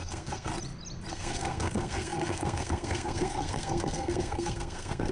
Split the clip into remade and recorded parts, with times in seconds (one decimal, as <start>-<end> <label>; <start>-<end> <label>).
0.0-0.5 remade; 0.5-1.1 recorded; 1.1-5.1 remade